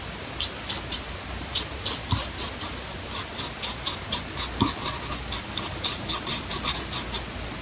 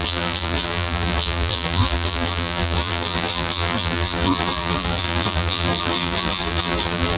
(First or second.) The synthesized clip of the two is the second